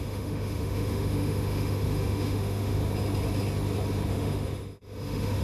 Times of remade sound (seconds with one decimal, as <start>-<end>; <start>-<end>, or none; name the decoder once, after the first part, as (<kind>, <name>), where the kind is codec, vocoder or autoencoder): 0.0-2.8 (autoencoder, DAC-VAE); 4.1-5.4